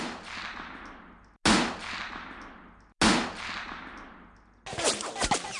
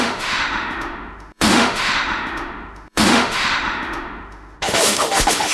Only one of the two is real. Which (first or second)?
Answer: first